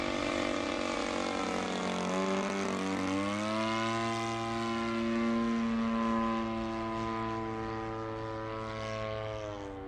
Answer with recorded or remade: recorded